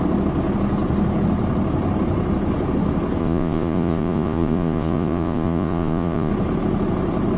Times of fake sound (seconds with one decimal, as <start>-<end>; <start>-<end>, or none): 3.2-6.3